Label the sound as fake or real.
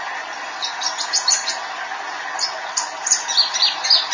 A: real